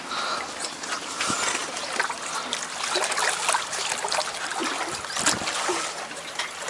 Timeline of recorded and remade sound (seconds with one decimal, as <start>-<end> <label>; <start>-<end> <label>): 0.0-6.7 recorded

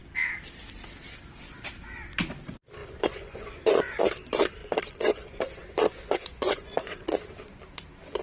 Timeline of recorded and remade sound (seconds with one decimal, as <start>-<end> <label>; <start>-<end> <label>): 0.0-2.8 recorded; 2.8-4.0 remade; 4.0-4.6 recorded; 4.6-7.2 remade; 7.2-8.2 recorded

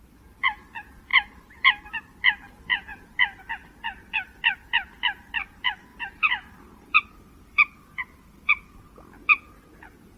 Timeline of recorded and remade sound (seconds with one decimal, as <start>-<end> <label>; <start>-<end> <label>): 0.0-1.1 recorded; 1.1-1.9 remade; 1.9-5.9 recorded; 5.9-7.1 remade; 7.1-10.2 recorded

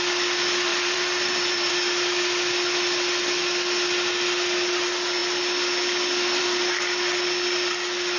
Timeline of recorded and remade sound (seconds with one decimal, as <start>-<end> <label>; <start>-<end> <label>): 0.0-0.7 recorded; 0.7-1.7 remade; 1.7-8.2 recorded